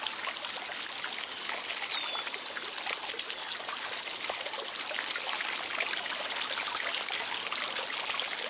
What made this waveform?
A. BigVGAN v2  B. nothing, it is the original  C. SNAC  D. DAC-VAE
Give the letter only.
B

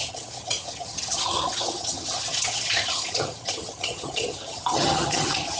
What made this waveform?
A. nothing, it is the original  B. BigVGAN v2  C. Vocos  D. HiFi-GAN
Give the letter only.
D